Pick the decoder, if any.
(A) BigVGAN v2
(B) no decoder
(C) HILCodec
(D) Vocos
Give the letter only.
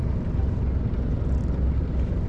B